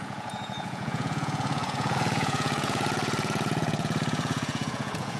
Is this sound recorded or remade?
remade